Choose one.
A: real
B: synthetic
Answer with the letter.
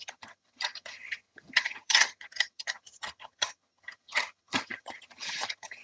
B